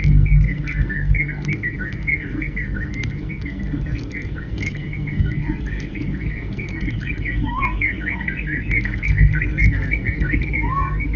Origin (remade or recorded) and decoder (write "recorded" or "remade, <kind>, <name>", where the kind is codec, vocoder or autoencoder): remade, codec, SNAC